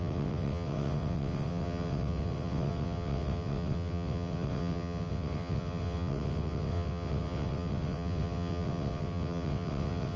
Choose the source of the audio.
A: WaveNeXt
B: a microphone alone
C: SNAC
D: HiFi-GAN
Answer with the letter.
A